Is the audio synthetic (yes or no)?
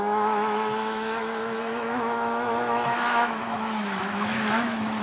yes